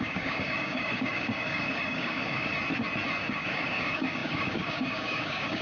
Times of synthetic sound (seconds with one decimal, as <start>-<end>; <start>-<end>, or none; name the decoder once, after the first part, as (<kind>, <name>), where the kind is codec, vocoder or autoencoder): 0.0-2.5 (codec, DAC); 3.2-5.6